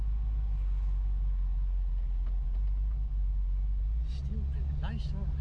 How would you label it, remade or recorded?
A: recorded